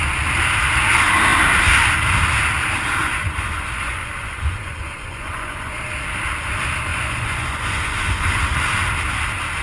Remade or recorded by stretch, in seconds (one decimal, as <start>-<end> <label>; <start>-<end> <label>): 0.0-3.0 recorded; 3.0-5.8 remade; 5.8-6.9 recorded; 6.9-8.4 remade; 8.4-9.6 recorded